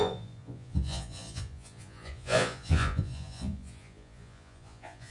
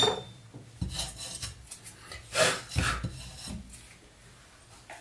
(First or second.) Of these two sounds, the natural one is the second